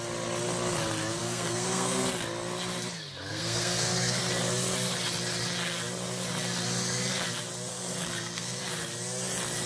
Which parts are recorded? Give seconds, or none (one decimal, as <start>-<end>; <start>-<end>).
0.0-1.2; 2.0-3.3; 4.2-7.7; 8.6-9.7